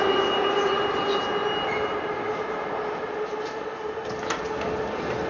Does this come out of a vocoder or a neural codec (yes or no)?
no